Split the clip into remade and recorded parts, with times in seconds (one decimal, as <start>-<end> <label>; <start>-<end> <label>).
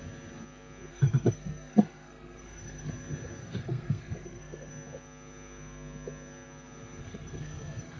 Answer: 0.0-0.9 recorded; 0.9-2.9 remade; 2.9-3.4 recorded; 3.4-4.7 remade; 4.7-7.0 recorded; 7.0-8.0 remade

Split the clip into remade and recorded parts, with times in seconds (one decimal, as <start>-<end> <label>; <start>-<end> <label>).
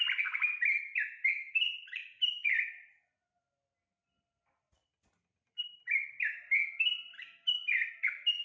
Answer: 0.0-2.0 recorded; 2.0-3.0 remade; 3.0-4.8 recorded; 4.8-6.1 remade; 6.1-8.4 recorded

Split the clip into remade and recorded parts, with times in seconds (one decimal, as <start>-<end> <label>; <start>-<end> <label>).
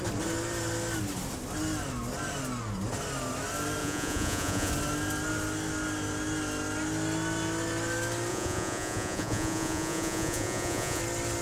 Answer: 0.0-3.8 recorded; 3.8-4.7 remade; 4.7-8.3 recorded; 8.3-11.0 remade; 11.0-11.4 recorded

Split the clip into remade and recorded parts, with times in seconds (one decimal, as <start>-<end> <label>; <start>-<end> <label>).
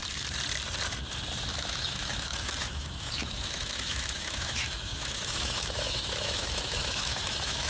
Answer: 0.0-1.5 recorded; 1.5-7.7 remade